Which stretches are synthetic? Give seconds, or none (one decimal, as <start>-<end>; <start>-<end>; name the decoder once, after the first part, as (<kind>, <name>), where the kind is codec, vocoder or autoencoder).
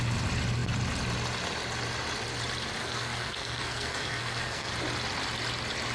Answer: 2.8-4.7 (codec, SNAC)